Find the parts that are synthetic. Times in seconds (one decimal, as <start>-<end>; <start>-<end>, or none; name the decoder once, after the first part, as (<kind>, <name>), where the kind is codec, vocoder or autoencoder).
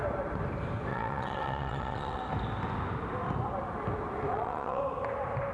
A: 0.9-2.2 (vocoder, WaveNeXt); 4.3-4.8